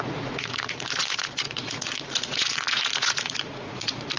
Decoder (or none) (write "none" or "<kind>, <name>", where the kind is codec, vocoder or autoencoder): vocoder, Vocos